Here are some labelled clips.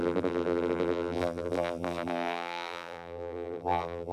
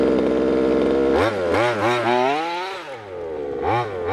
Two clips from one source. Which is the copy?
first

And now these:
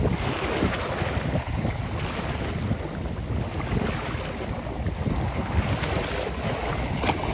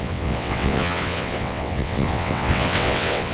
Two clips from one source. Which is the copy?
second